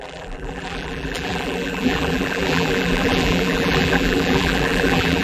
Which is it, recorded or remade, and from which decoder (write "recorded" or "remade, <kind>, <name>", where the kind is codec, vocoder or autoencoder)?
remade, vocoder, BigVGAN v2